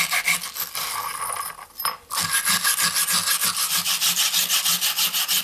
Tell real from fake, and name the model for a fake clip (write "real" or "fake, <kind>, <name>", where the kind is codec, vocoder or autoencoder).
real